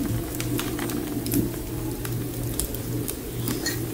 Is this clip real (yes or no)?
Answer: yes